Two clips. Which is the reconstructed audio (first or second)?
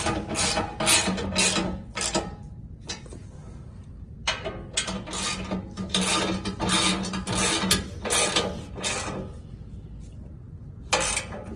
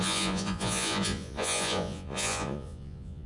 second